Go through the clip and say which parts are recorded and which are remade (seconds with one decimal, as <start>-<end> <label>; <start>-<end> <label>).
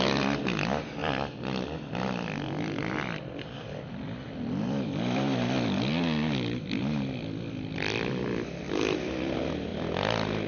0.0-1.0 recorded; 1.0-5.4 remade; 5.4-9.7 recorded; 9.7-10.5 remade